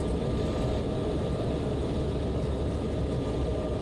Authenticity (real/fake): real